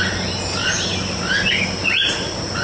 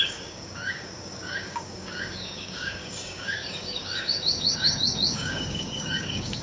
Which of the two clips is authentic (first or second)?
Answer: first